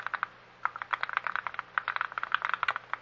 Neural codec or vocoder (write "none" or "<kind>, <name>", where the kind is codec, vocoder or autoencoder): none